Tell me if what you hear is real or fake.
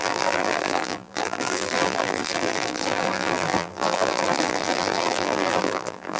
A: fake